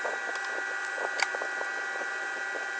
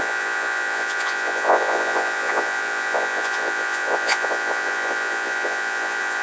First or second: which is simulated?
second